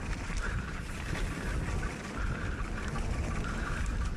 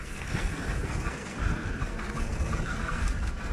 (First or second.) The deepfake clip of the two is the second